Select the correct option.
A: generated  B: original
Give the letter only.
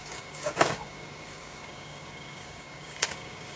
A